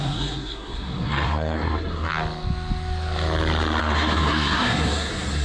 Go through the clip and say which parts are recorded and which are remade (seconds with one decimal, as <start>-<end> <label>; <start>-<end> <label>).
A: 0.0-2.1 remade; 2.1-3.8 recorded; 3.8-5.4 remade